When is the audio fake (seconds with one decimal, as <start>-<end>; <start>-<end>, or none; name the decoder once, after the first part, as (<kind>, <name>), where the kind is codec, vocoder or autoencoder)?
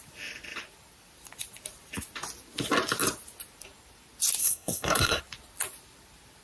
4.4-5.2 (codec, SNAC)